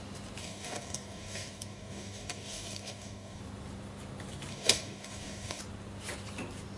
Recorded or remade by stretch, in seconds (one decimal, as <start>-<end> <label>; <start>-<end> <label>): 0.0-0.4 recorded; 0.4-3.4 remade; 3.4-4.5 recorded; 4.5-5.6 remade; 5.6-6.8 recorded